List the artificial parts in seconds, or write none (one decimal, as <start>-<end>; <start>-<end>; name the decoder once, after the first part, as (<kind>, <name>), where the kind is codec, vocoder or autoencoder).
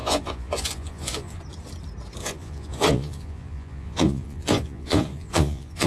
0.0-1.4 (vocoder, Vocos); 2.2-5.9